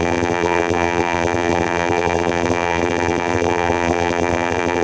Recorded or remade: remade